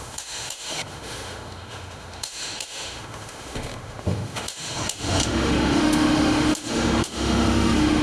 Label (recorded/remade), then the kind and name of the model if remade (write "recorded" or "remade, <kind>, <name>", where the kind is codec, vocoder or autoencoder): remade, autoencoder, DAC-VAE